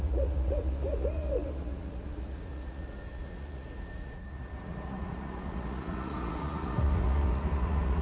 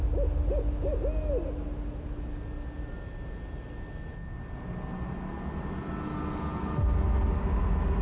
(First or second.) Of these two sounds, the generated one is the first